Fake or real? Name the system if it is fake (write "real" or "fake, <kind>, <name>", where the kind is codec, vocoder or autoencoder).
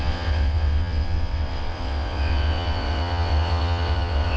fake, vocoder, WaveNeXt